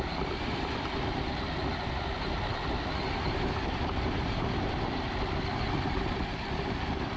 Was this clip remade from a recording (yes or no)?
no